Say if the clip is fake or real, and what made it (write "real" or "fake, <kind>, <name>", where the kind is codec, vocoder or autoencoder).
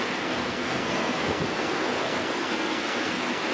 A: fake, codec, SNAC